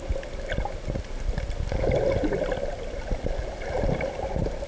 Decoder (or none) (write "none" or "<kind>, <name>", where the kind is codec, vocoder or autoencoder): none